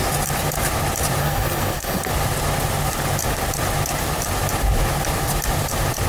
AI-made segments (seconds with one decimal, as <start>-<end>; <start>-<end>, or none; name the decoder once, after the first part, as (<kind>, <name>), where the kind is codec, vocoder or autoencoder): 1.2-2.1 (codec, SNAC)